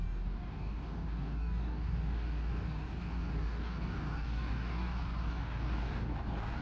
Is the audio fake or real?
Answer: fake